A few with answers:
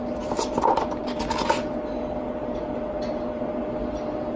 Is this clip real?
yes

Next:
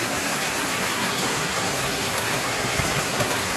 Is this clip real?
no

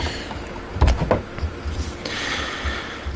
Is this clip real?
yes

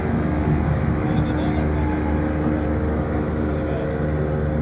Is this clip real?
yes